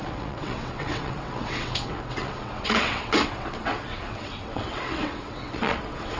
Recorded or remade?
remade